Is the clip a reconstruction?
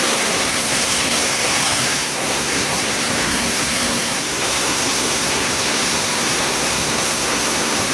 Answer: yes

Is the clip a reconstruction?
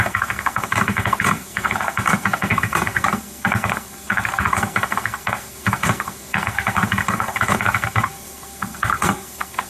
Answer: yes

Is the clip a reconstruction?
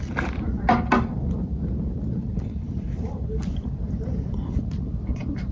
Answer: yes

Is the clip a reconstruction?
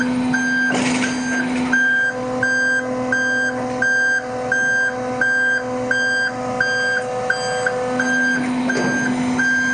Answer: no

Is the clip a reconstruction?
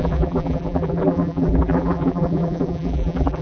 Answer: yes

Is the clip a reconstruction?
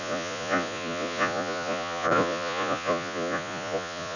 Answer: yes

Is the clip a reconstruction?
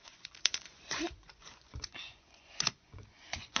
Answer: yes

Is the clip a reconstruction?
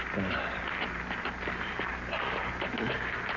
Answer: no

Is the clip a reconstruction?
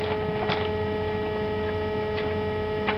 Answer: no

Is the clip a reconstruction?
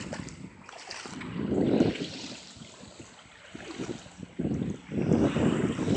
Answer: no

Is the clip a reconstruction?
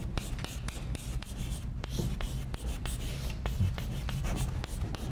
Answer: no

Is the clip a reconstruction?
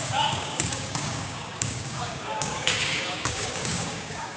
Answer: yes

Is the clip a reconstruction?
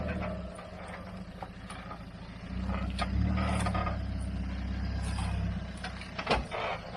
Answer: no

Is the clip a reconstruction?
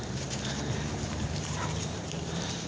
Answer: yes